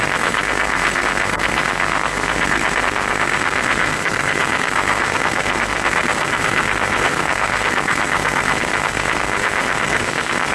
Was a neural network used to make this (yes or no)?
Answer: yes